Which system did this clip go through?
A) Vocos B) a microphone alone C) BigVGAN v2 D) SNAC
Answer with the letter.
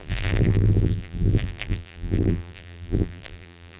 C